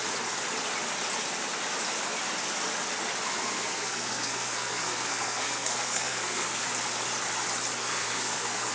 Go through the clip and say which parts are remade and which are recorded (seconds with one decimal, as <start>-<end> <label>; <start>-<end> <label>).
0.0-3.3 recorded; 3.3-6.6 remade; 6.6-7.8 recorded; 7.8-8.7 remade